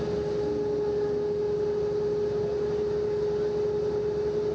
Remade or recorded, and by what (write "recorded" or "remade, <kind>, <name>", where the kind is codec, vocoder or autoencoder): recorded